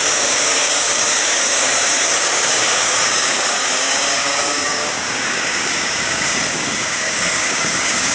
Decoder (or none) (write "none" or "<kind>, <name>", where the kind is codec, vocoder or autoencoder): codec, DAC